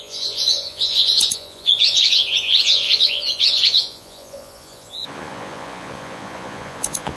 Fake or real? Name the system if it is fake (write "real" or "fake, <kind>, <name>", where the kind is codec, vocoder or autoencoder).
fake, vocoder, Vocos